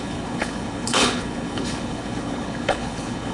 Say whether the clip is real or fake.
fake